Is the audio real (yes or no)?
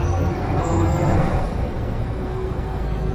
no